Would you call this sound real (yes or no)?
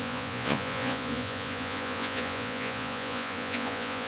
no